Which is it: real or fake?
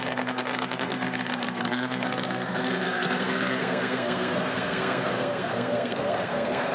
fake